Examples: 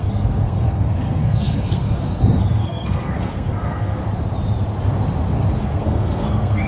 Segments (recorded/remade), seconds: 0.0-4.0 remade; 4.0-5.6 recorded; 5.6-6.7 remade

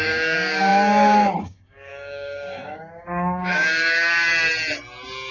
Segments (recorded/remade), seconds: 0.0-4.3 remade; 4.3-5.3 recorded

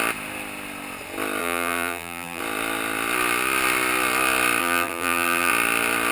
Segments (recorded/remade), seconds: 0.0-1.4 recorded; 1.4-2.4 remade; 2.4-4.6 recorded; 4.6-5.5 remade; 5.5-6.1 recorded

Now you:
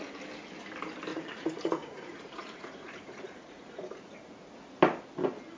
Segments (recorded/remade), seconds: 0.0-1.1 recorded; 1.1-4.5 remade; 4.5-5.6 recorded

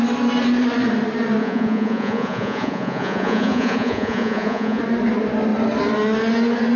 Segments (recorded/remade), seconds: 0.0-1.4 recorded; 1.4-4.8 remade; 4.8-6.8 recorded

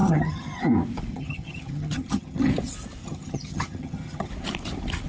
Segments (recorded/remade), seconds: 0.0-0.6 remade; 0.6-1.1 recorded; 1.1-2.5 remade; 2.5-3.0 recorded; 3.0-4.3 remade; 4.3-5.1 recorded

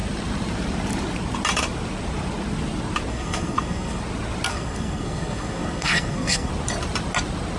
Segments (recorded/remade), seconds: 0.0-3.1 recorded; 3.1-4.0 remade; 4.0-4.5 recorded; 4.5-6.5 remade; 6.5-7.6 recorded

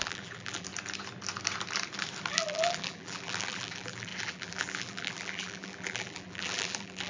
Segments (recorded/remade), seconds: 0.0-0.7 remade; 0.7-2.3 recorded; 2.3-7.1 remade